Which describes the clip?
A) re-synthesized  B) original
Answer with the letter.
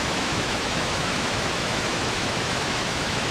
A